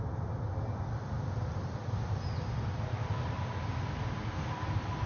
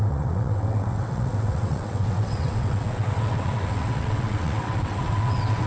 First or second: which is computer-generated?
second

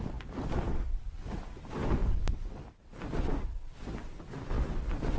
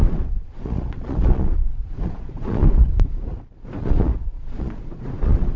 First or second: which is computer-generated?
second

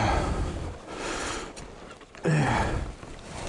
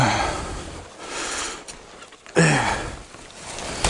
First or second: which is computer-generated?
first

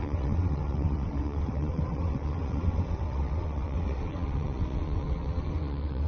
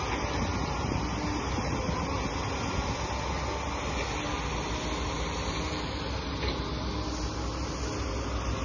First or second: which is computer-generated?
first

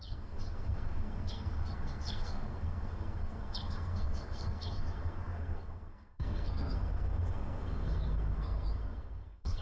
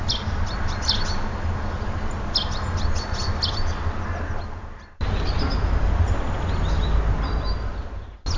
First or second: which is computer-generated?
first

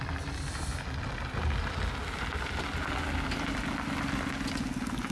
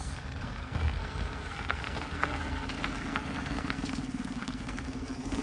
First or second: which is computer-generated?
second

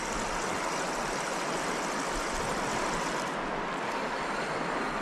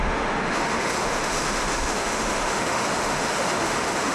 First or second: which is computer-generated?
second